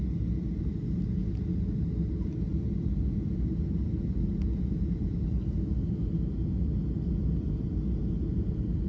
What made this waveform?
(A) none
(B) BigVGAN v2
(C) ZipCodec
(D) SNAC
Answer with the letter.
A